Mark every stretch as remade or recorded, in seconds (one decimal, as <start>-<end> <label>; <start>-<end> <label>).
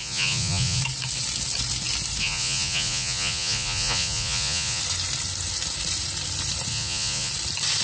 0.0-0.8 remade; 0.8-2.2 recorded; 2.2-4.8 remade; 4.8-6.7 recorded; 6.7-7.3 remade; 7.3-7.8 recorded